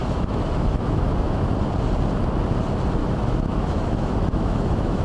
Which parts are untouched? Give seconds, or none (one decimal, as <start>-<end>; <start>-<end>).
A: 1.5-3.0